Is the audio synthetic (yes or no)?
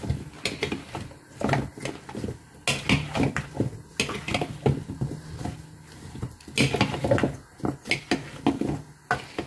no